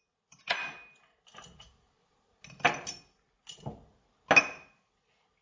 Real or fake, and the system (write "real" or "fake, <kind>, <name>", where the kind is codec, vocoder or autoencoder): real